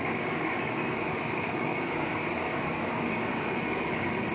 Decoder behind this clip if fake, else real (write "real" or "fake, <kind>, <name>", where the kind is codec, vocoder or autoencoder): fake, codec, DAC